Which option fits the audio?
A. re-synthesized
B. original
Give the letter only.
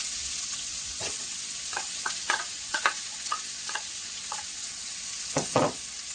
A